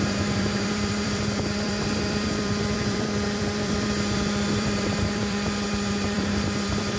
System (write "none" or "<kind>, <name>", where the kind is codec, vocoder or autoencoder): vocoder, BigVGAN v2